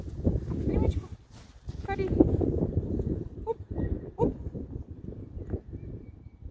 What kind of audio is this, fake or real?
real